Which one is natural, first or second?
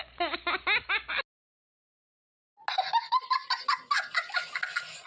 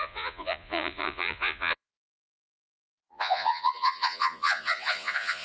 first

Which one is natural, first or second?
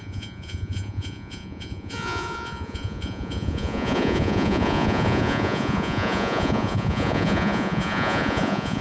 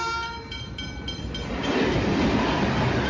second